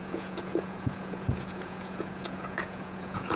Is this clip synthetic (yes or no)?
yes